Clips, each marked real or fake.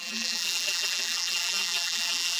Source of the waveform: fake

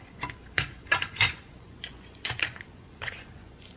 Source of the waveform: fake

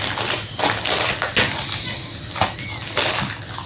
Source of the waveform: real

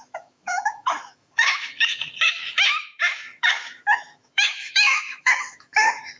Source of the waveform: fake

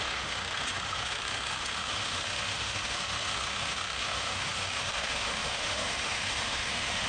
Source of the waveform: fake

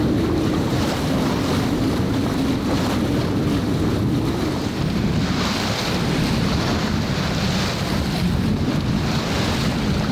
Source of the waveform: real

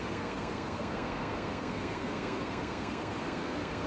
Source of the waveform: fake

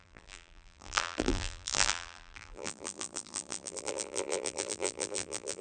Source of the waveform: fake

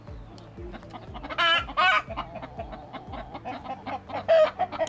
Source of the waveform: real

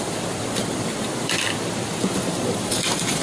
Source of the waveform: fake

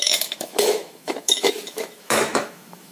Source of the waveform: fake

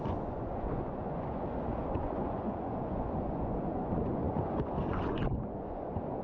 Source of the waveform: fake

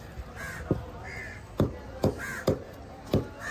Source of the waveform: real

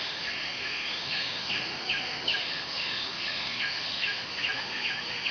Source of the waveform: fake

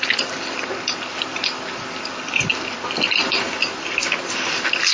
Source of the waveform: real